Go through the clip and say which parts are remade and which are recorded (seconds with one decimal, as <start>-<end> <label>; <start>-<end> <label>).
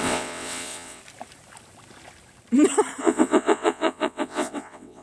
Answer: 0.0-1.0 remade; 1.0-3.0 recorded; 3.0-5.0 remade